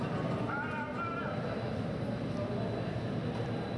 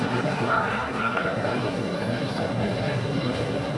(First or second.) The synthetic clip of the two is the second